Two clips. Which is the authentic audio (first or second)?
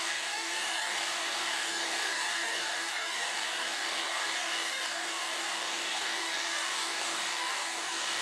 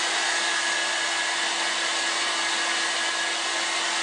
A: second